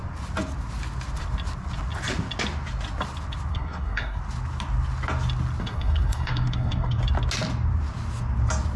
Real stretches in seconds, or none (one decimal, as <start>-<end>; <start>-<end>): 0.0-3.5; 4.2-5.6; 7.0-8.8